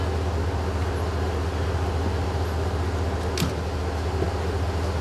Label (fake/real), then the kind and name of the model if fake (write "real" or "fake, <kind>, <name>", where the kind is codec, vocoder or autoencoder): real